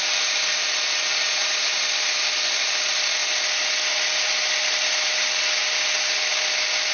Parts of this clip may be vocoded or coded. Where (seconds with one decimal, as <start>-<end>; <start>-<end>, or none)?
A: none

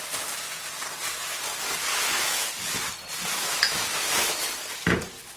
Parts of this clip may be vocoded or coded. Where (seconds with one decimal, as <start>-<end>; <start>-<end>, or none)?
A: 1.9-2.5; 3.3-4.4

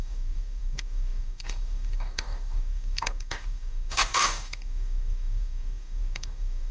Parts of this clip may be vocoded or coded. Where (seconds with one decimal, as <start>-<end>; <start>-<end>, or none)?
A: 0.0-6.7